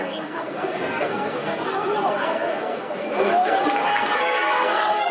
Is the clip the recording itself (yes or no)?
no